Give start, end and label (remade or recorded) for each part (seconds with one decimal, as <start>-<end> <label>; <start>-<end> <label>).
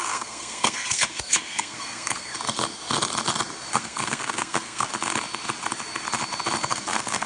0.0-2.3 remade; 2.3-3.7 recorded; 3.7-4.9 remade; 4.9-6.7 recorded; 6.7-7.3 remade